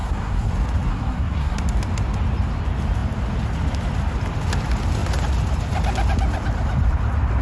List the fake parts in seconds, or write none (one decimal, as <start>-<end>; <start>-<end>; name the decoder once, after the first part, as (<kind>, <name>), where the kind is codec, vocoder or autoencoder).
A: 0.0-0.5 (codec, SNAC); 0.9-1.6